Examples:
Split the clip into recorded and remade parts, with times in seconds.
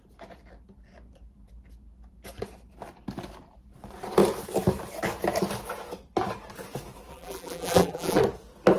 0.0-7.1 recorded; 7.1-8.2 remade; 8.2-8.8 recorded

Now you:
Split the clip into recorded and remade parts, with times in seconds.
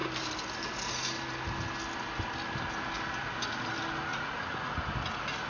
0.0-4.1 recorded; 4.1-4.8 remade; 4.8-5.5 recorded